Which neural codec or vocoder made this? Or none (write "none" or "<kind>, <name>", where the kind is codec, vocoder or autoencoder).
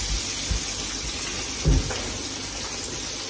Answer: none